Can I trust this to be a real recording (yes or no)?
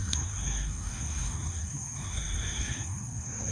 no